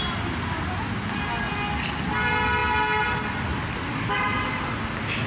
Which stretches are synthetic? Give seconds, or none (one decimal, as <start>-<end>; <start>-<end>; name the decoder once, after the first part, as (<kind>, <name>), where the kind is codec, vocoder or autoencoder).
none